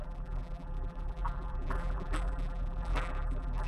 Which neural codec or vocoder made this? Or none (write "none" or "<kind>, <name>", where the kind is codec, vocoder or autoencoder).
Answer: vocoder, BigVGAN v2